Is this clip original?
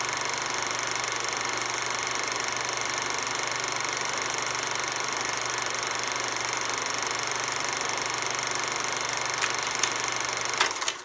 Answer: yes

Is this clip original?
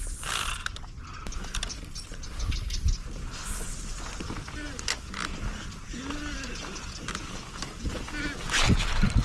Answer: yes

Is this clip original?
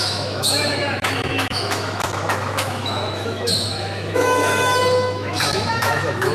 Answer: no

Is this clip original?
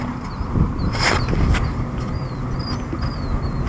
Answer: yes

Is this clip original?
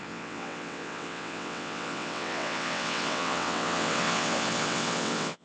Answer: no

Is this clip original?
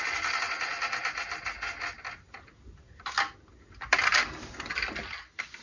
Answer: yes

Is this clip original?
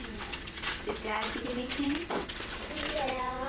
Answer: no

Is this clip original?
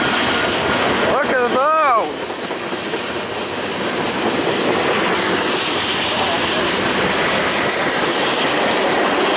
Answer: yes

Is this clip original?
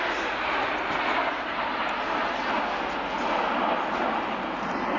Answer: yes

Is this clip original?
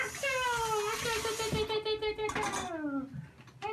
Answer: yes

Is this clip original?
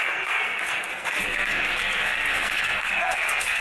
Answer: no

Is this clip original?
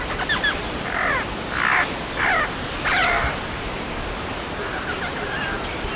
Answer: yes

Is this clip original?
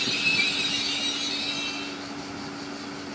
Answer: yes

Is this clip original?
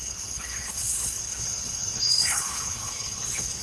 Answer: no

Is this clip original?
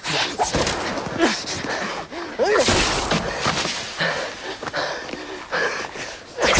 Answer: yes